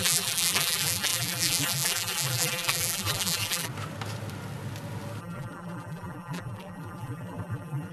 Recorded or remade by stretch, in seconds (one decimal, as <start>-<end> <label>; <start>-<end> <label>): 0.0-3.7 remade; 3.7-5.2 recorded; 5.2-7.9 remade